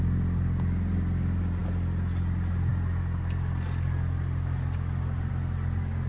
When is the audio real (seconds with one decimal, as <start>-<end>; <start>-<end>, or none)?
0.0-6.1